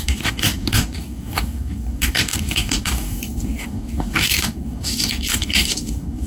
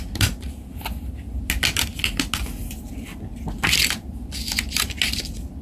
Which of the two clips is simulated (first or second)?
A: first